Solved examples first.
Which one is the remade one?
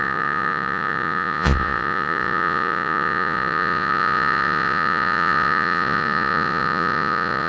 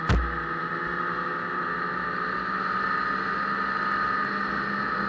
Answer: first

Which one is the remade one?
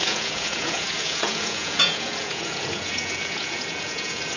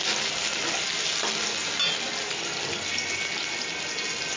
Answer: first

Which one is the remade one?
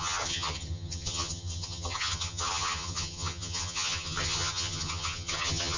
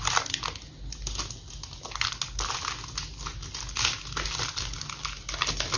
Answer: first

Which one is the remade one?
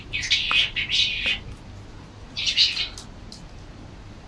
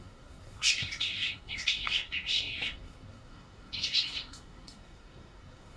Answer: second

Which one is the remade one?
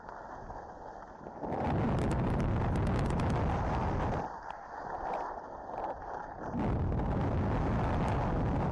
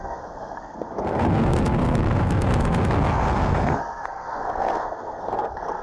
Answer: second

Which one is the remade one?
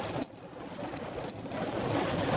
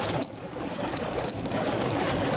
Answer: second